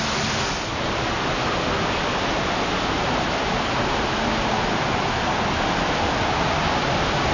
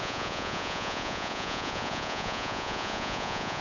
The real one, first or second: first